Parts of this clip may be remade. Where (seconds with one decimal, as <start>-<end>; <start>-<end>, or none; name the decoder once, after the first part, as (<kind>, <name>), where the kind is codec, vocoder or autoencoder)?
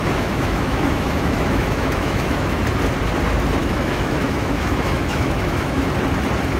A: 0.0-2.6 (autoencoder, DAC-VAE); 3.6-5.9